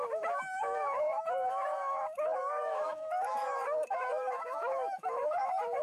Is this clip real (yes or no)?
no